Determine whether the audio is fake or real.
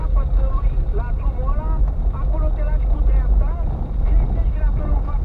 real